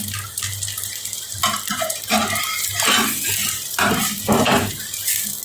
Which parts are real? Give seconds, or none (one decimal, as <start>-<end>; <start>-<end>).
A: 0.0-5.4